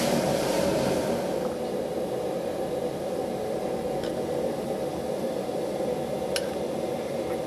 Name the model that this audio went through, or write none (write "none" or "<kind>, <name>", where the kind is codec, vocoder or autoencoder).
none